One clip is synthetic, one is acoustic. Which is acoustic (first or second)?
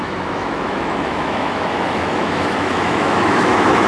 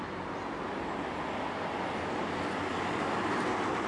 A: second